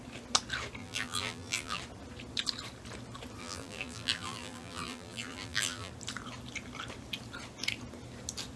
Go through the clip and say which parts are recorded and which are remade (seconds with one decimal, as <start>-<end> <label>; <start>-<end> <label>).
0.0-0.8 recorded; 0.8-1.8 remade; 1.8-3.4 recorded; 3.4-5.9 remade; 5.9-8.6 recorded

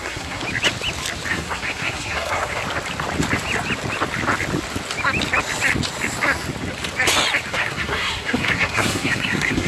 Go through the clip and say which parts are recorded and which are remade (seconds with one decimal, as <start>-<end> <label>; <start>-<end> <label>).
0.0-0.4 remade; 0.4-1.3 recorded; 1.3-2.6 remade; 2.6-7.5 recorded; 7.5-9.7 remade

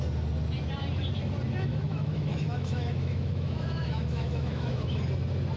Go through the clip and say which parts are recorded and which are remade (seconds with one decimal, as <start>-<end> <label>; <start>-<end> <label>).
0.0-1.7 recorded; 1.7-4.8 remade; 4.8-5.6 recorded

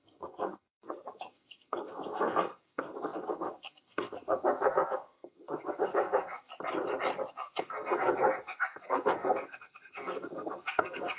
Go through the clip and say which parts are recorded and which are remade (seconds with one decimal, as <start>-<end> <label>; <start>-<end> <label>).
0.0-6.5 remade; 6.5-7.3 recorded; 7.3-11.2 remade

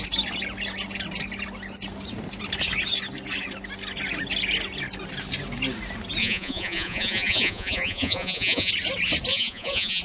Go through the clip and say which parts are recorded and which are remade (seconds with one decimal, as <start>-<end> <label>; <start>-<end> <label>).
0.0-6.2 recorded; 6.2-8.7 remade; 8.7-9.3 recorded; 9.3-10.0 remade